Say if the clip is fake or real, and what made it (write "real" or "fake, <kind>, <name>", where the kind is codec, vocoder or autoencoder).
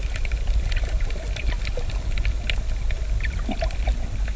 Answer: real